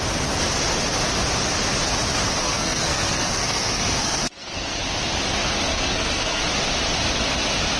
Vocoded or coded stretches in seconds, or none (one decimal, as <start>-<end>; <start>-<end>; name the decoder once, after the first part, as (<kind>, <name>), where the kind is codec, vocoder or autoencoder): 2.4-4.8 (codec, SNAC); 5.7-6.4